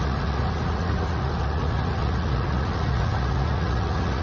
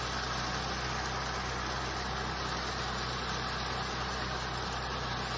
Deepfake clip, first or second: first